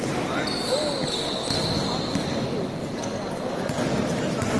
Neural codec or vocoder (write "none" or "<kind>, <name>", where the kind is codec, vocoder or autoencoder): none